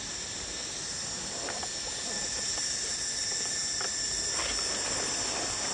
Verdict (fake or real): real